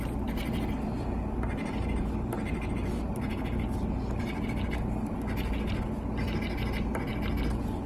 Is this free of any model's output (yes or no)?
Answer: yes